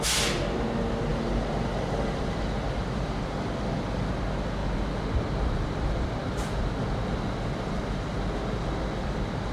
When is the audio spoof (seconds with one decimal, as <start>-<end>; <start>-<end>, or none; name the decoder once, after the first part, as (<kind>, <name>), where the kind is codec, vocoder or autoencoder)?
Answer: 1.1-4.1 (vocoder, BigVGAN v2)